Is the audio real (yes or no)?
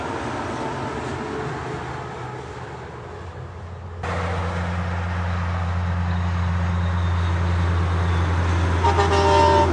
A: yes